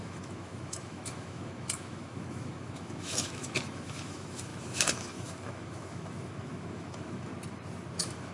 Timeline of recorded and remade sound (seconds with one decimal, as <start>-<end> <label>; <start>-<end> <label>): 0.0-7.3 remade; 7.3-7.9 recorded; 7.9-8.3 remade